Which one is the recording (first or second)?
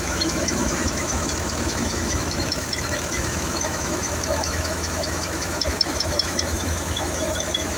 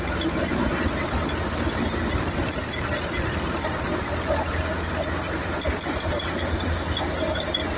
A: second